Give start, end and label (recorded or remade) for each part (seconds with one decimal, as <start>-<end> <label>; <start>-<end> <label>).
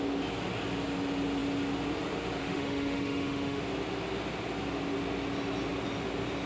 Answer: 0.0-2.4 recorded; 2.4-3.6 remade; 3.6-6.5 recorded